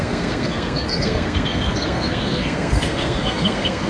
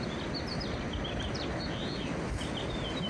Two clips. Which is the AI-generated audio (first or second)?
first